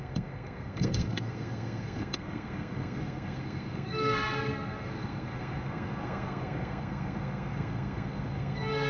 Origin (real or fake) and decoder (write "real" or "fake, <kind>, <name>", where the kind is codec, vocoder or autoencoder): fake, codec, SNAC